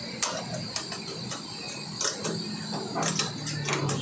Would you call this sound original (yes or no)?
yes